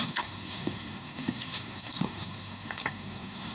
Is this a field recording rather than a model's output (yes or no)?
no